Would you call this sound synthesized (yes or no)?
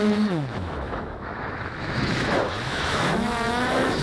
yes